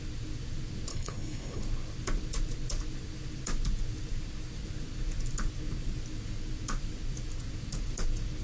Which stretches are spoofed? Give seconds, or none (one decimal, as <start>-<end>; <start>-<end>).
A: 0.9-1.6